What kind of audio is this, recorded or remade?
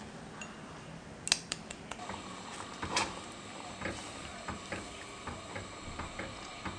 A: recorded